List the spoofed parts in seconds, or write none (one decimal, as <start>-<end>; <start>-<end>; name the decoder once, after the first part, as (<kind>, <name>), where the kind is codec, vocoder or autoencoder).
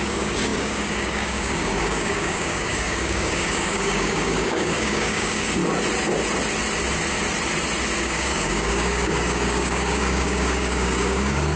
0.0-5.6 (codec, DAC); 8.0-11.6